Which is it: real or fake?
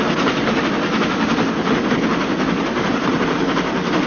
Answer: real